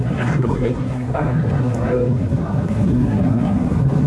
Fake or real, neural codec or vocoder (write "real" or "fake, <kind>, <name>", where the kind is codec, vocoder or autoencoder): fake, codec, SNAC